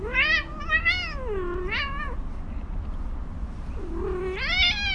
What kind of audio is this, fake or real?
real